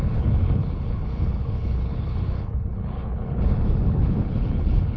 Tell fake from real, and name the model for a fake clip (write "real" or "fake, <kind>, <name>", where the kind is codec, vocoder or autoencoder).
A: fake, codec, HILCodec